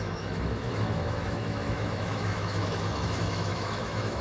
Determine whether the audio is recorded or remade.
remade